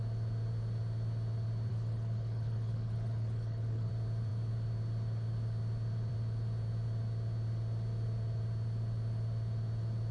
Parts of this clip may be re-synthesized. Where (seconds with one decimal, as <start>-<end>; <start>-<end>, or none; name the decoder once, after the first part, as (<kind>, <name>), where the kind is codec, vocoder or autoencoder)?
1.7-3.9 (codec, HILCodec)